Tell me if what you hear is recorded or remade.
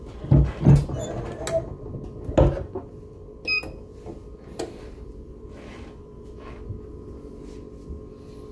recorded